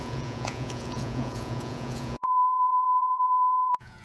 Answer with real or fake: fake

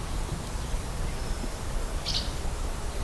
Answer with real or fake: real